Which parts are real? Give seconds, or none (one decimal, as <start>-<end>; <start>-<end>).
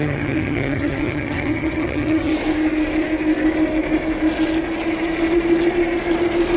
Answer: 2.3-6.6